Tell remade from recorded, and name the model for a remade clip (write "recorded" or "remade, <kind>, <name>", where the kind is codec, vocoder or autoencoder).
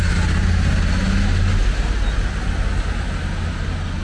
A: recorded